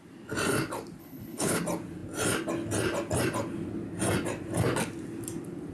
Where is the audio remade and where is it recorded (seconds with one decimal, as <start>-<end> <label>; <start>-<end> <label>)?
0.0-1.0 recorded; 1.0-1.6 remade; 1.6-5.7 recorded